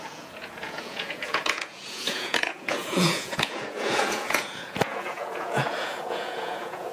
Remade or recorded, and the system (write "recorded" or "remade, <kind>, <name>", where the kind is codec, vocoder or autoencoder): remade, vocoder, Vocos